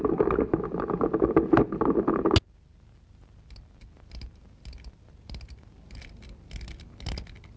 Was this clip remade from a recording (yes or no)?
no